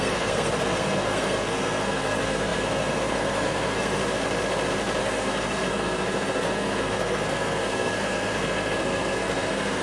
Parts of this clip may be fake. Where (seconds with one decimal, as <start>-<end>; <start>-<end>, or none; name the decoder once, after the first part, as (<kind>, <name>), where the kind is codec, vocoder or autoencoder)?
0.0-4.0 (codec, SNAC); 5.0-9.8